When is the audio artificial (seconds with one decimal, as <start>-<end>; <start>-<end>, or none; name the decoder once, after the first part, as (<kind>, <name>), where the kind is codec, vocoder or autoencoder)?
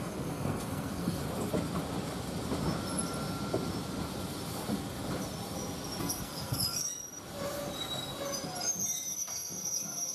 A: 0.0-1.2 (codec, SNAC); 6.0-6.9; 9.1-10.1